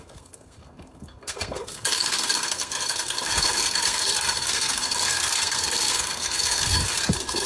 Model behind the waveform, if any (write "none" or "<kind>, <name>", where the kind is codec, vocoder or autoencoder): codec, SNAC